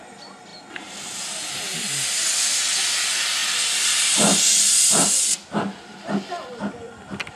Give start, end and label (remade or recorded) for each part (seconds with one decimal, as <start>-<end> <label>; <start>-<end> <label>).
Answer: 0.0-7.4 recorded

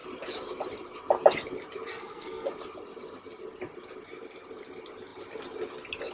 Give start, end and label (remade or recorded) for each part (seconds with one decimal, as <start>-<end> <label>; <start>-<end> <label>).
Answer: 0.0-1.9 recorded; 1.9-2.5 remade; 2.5-6.1 recorded